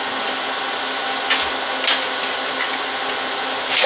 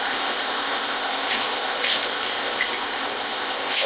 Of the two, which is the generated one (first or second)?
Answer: second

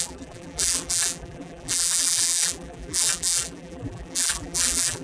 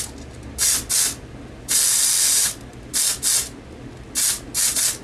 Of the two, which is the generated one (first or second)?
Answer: first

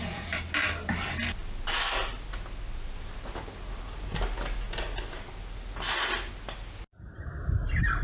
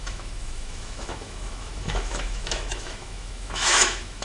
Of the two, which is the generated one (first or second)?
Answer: second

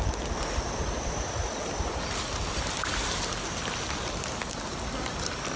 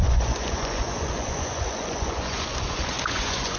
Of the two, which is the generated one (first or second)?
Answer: second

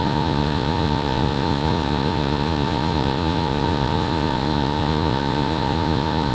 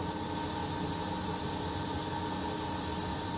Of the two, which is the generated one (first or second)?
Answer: first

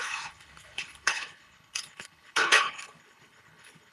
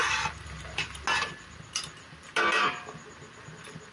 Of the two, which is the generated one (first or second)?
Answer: first